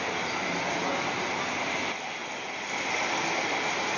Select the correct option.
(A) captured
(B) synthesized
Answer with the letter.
A